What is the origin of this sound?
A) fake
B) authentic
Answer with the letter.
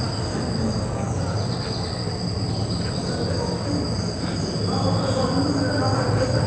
B